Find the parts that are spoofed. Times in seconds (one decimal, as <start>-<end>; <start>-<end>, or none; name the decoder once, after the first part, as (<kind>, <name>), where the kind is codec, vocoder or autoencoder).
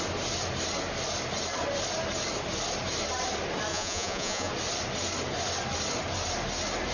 3.7-4.5 (vocoder, Vocos)